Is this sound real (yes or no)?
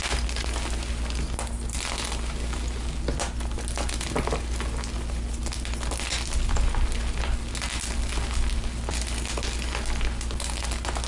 yes